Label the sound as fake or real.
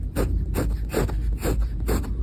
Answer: real